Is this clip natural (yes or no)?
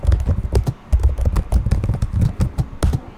yes